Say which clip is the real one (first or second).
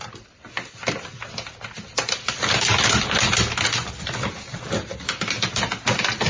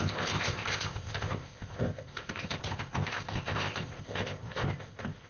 first